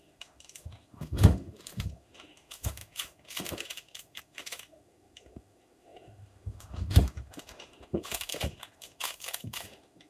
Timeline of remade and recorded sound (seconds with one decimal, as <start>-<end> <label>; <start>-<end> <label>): 0.0-10.1 remade